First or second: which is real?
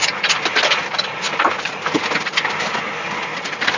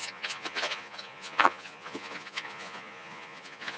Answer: first